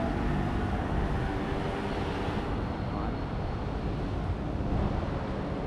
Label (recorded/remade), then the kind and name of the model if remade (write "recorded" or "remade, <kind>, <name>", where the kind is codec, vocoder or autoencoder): recorded